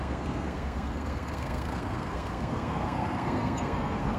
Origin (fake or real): fake